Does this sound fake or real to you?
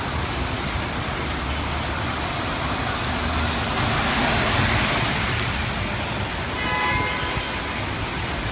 real